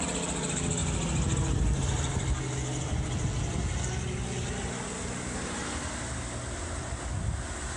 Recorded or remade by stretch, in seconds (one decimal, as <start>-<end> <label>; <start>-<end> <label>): 0.0-7.8 recorded